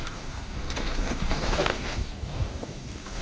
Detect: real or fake fake